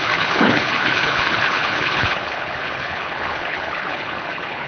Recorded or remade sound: remade